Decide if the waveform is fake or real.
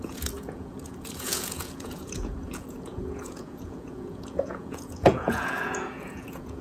fake